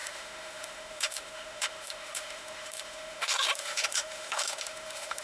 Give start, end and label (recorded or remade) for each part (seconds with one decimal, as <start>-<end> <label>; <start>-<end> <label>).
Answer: 0.0-5.2 remade